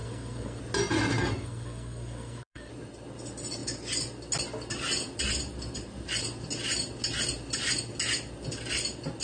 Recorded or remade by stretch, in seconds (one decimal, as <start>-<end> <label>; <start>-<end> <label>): 0.0-0.6 remade; 0.6-1.2 recorded; 1.2-2.7 remade; 2.7-9.2 recorded